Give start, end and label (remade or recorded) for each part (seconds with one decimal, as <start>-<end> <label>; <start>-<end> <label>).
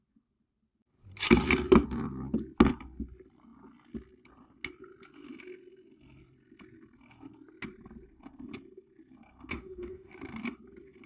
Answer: 0.0-9.5 recorded; 9.5-10.1 remade; 10.1-11.1 recorded